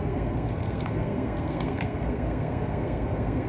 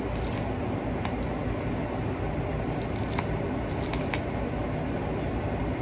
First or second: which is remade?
first